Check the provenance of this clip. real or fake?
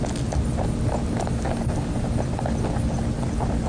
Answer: real